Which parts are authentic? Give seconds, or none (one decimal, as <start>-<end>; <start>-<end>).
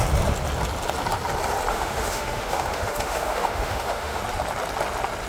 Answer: 0.0-1.7; 4.2-5.3